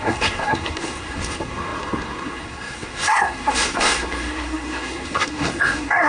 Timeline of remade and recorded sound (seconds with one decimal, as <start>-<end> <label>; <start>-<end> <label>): 0.0-6.1 remade